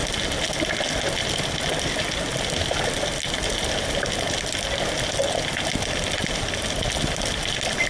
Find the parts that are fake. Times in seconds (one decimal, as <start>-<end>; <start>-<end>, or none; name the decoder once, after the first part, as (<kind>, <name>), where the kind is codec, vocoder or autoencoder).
none